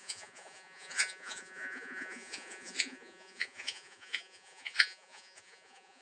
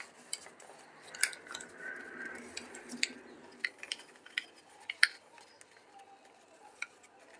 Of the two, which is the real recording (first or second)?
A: second